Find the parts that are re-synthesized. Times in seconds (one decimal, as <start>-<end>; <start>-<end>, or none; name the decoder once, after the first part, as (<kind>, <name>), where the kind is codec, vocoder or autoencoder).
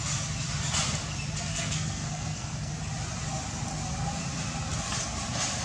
1.5-2.7 (codec, SNAC)